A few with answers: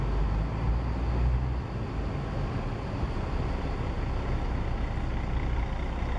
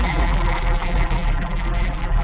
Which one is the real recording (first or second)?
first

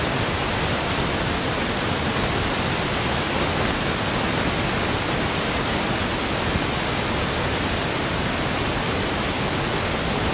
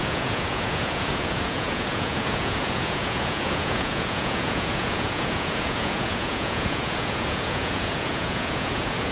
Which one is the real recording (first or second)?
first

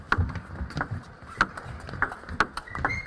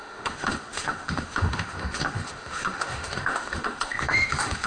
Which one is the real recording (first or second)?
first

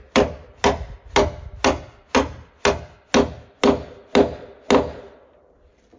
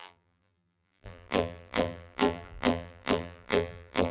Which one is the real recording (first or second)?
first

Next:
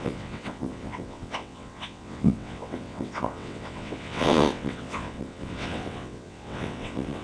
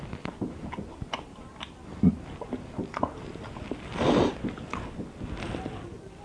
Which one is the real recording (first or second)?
second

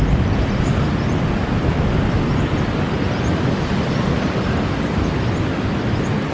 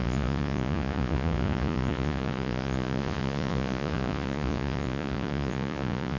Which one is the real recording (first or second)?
first